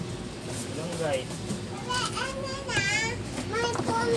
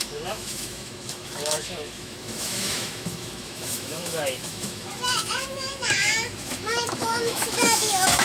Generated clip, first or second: second